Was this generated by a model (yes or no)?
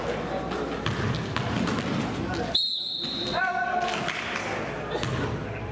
no